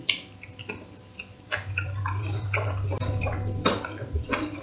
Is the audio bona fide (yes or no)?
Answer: no